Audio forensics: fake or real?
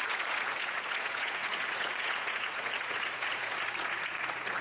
fake